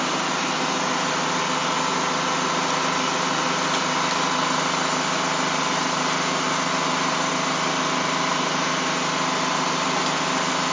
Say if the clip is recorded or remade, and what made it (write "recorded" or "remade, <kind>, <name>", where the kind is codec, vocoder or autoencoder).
recorded